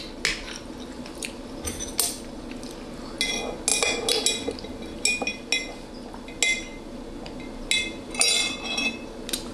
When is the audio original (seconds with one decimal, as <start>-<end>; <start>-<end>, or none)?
0.0-9.5